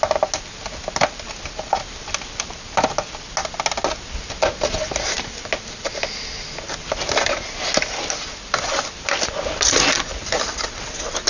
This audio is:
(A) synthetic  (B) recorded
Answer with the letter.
B